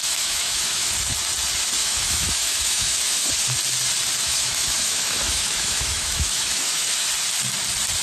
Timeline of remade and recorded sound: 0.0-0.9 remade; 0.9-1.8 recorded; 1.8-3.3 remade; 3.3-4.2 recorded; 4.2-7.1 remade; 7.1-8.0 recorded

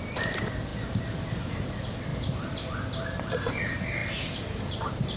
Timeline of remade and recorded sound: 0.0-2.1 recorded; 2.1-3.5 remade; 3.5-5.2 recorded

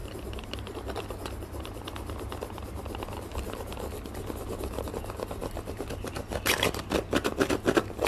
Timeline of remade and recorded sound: 0.0-4.9 remade; 4.9-8.1 recorded